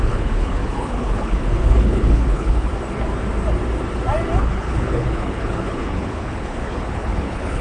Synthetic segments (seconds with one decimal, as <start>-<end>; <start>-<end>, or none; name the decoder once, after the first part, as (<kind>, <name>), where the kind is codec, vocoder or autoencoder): 0.0-2.7 (codec, HILCodec); 4.4-7.6